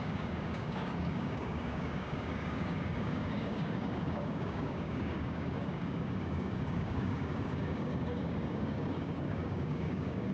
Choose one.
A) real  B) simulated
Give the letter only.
B